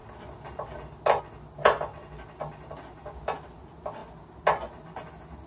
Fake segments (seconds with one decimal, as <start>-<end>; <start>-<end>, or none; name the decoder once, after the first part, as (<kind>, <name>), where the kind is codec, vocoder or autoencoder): none

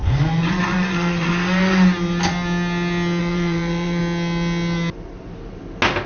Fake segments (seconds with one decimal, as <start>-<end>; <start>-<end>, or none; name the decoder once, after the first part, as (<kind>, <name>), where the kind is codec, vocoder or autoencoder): 0.0-1.3 (vocoder, Vocos); 3.2-4.0

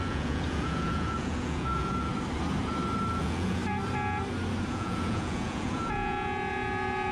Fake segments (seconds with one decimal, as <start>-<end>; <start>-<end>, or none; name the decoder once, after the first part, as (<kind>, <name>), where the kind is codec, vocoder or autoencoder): 0.0-2.1 (vocoder, Vocos); 3.2-3.6; 4.7-7.1

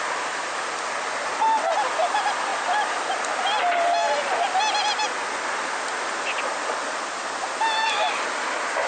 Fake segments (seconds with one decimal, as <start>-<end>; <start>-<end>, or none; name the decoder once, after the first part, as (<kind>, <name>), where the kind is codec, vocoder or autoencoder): none

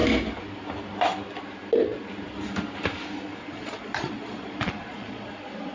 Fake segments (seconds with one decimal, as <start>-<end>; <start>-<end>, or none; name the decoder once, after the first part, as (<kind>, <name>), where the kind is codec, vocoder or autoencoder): 3.4-5.7 (vocoder, Vocos)

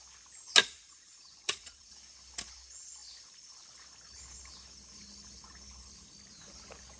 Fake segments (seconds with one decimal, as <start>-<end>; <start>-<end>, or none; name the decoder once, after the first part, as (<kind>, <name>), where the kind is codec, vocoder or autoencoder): 0.6-1.9 (vocoder, Vocos)

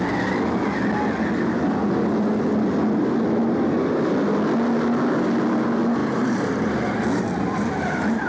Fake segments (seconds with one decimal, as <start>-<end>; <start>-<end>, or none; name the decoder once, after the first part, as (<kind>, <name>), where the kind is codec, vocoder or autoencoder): 6.0-6.7 (vocoder, BigVGAN v2)

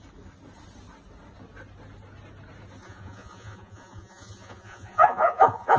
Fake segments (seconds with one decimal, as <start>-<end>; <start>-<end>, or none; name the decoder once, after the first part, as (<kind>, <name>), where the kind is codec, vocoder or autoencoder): 2.8-5.8 (vocoder, Vocos)